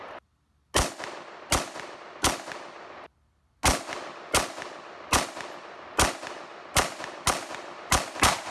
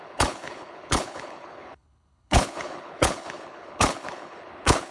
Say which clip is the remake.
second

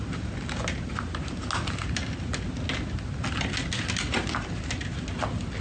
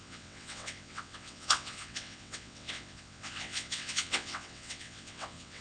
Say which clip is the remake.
second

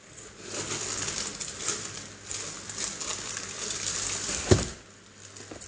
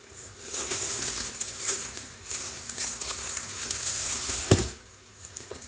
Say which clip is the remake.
second